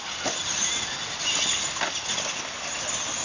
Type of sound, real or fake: real